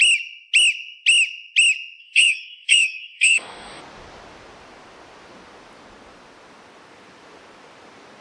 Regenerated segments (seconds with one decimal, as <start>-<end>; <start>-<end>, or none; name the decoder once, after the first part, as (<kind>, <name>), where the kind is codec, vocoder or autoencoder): 2.0-3.8 (codec, DAC)